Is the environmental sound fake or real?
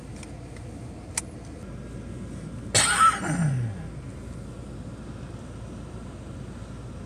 real